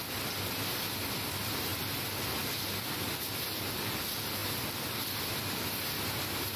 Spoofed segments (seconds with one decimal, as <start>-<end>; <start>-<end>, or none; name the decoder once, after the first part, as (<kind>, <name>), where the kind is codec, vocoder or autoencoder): none